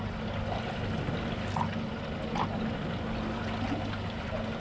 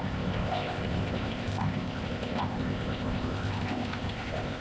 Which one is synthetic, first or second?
second